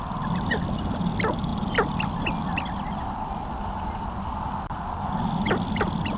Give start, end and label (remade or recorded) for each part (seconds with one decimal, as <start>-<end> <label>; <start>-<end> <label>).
0.0-6.2 recorded